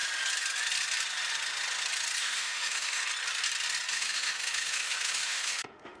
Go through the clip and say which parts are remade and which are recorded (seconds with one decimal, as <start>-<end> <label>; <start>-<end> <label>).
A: 0.0-2.2 recorded; 2.2-3.0 remade; 3.0-3.9 recorded; 3.9-6.0 remade